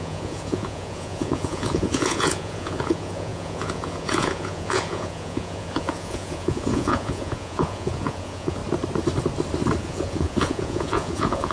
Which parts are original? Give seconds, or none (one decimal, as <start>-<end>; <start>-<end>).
8.6-9.8